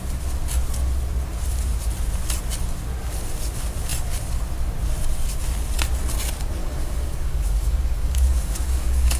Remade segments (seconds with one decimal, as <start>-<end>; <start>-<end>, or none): 6.6-9.2